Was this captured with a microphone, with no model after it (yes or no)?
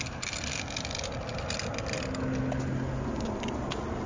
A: yes